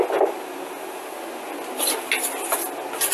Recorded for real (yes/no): yes